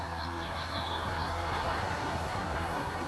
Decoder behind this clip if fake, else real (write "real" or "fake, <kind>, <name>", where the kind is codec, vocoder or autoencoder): fake, codec, SNAC